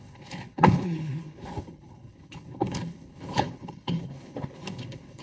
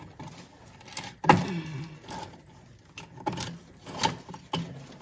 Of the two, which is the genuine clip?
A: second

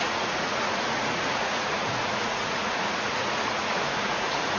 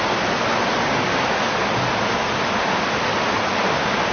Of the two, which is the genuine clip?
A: second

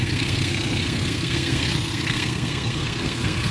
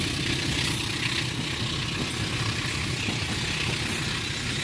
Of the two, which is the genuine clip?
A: second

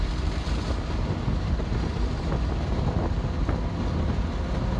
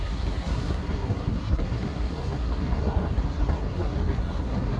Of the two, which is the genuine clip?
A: first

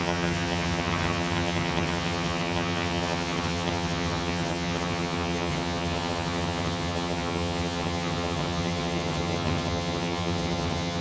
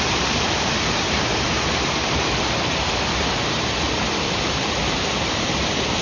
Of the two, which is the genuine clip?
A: second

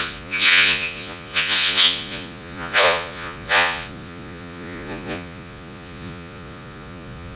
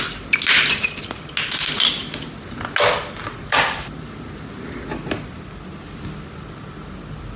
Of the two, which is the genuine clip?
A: second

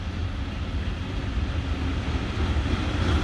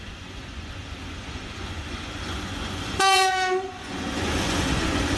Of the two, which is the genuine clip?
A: first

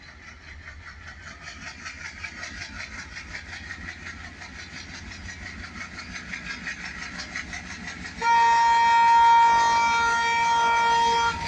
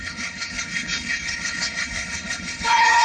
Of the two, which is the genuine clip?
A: first